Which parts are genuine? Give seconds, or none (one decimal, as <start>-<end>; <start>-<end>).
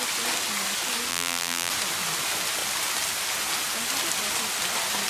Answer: 0.0-1.1; 1.7-5.1